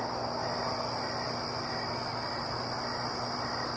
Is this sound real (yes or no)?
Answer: yes